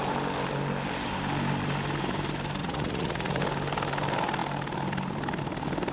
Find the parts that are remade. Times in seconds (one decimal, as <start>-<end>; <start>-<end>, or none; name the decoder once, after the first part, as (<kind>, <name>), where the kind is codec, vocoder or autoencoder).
2.6-3.4 (vocoder, Vocos)